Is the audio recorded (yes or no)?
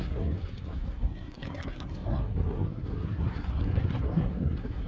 no